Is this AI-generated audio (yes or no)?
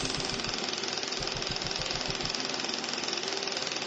no